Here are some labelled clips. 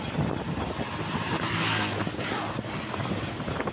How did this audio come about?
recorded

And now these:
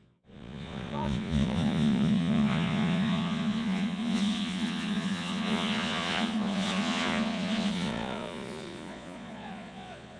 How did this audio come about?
remade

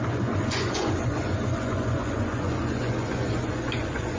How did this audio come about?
remade